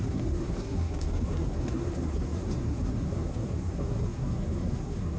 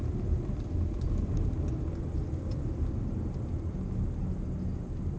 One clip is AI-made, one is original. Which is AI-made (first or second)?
first